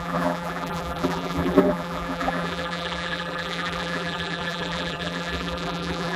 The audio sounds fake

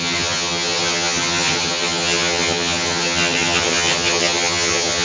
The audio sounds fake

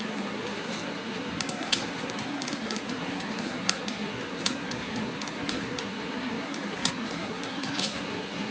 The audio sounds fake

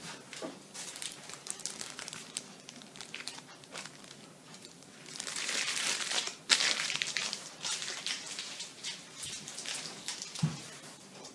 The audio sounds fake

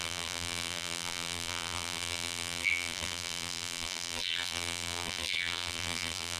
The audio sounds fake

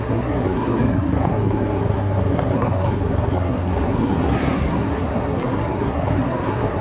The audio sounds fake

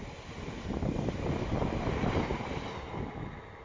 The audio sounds real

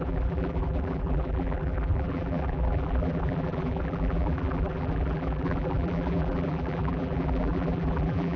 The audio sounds fake